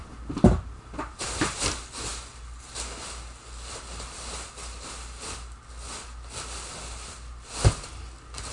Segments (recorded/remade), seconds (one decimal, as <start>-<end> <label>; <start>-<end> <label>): 0.0-8.5 recorded